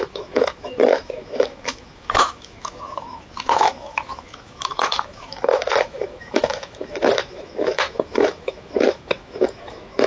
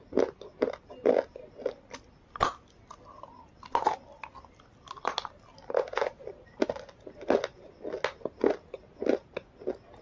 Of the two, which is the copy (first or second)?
first